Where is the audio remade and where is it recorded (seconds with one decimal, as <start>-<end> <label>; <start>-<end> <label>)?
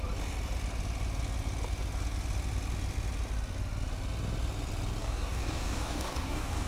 0.0-5.0 recorded; 5.0-6.7 remade